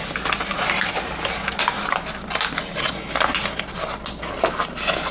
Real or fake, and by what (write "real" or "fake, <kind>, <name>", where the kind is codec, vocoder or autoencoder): real